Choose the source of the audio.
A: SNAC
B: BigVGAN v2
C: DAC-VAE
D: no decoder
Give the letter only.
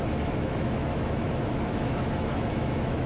C